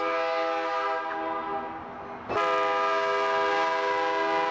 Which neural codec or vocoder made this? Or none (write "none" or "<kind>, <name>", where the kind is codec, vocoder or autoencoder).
none